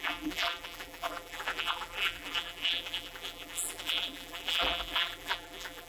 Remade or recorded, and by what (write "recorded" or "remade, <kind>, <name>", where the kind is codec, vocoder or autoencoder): remade, vocoder, BigVGAN v2